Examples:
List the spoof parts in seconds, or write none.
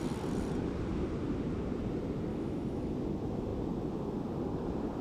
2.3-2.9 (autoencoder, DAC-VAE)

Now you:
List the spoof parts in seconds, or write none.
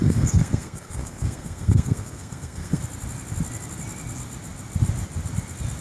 0.0-2.8 (codec, SNAC)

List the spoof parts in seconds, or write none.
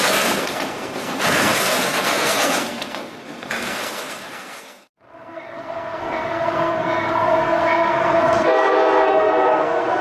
0.0-10.0 (codec, SNAC)